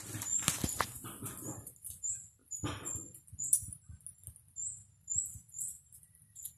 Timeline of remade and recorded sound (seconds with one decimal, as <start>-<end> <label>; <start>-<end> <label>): 0.0-6.6 recorded